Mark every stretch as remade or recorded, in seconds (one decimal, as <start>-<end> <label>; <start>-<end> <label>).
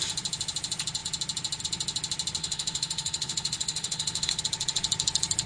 0.0-2.4 recorded; 2.4-4.4 remade; 4.4-5.5 recorded